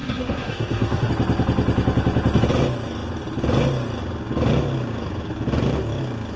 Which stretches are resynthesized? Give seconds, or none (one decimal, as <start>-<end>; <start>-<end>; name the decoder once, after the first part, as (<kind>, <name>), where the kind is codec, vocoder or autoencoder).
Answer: 0.0-1.1 (codec, SNAC)